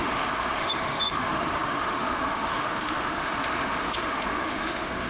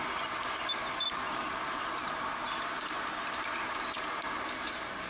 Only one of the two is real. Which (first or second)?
second